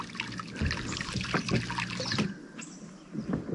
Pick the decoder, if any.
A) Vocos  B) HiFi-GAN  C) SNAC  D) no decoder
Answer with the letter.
D